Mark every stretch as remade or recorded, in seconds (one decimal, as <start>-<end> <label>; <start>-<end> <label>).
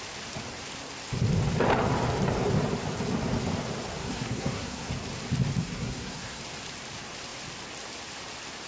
0.0-4.0 recorded; 4.0-4.9 remade; 4.9-5.6 recorded; 5.6-6.4 remade; 6.4-8.7 recorded